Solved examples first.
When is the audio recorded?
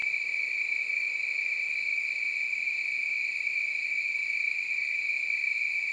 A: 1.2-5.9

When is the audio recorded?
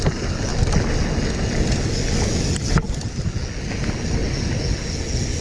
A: 0.0-5.4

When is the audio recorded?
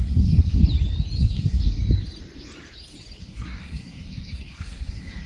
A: 0.6-1.2; 1.8-3.2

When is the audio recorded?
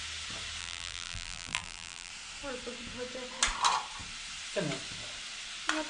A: 0.0-0.6; 2.1-5.9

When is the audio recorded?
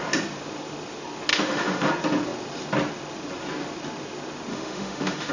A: 0.0-1.3; 1.9-4.5